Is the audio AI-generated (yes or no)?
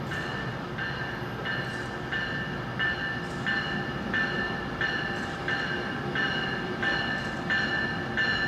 no